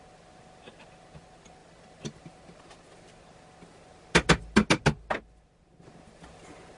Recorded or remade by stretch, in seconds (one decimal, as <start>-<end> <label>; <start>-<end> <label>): 0.0-6.8 recorded